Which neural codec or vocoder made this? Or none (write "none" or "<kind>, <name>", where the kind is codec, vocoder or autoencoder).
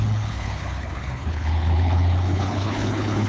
codec, HILCodec